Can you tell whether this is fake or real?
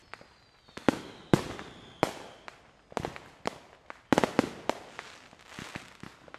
real